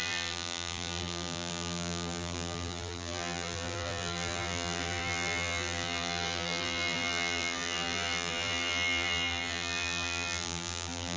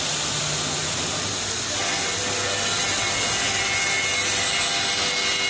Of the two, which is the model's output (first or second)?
first